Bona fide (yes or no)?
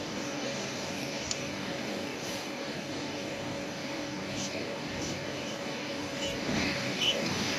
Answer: no